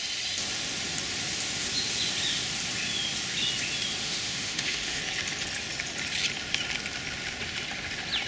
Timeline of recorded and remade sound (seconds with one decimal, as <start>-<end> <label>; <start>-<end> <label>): 0.0-4.0 recorded; 4.0-5.0 remade; 5.0-8.3 recorded